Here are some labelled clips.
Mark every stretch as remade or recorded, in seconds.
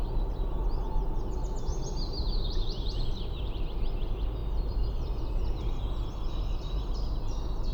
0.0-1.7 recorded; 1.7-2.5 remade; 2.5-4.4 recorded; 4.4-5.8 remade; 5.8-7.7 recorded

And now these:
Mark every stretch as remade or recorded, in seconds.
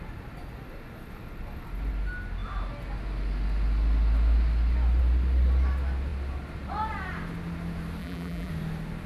0.0-8.0 recorded; 8.0-8.5 remade; 8.5-9.1 recorded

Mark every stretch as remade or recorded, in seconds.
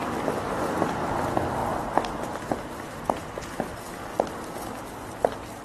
0.0-0.6 remade; 0.6-1.6 recorded; 1.6-3.3 remade; 3.3-4.1 recorded; 4.1-4.7 remade; 4.7-5.6 recorded